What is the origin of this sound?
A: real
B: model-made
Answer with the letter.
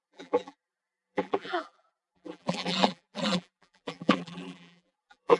B